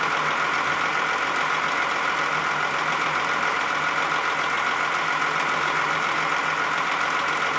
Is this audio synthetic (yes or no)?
no